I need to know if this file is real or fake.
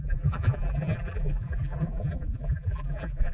fake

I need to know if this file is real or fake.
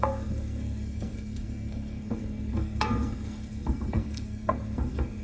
fake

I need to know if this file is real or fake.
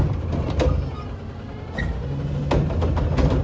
real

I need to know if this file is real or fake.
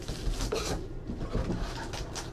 real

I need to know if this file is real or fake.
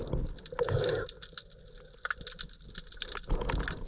real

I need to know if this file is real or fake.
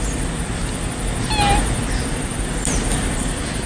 real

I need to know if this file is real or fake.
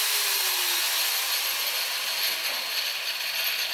real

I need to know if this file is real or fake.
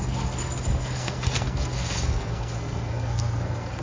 fake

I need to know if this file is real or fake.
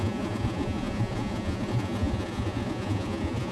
fake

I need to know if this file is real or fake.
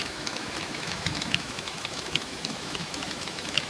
fake